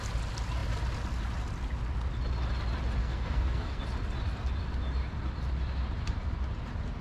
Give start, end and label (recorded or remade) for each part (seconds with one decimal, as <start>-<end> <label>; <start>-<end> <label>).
0.0-3.0 recorded; 3.0-3.8 remade; 3.8-7.0 recorded